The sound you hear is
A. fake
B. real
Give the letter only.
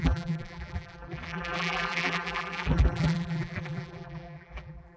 A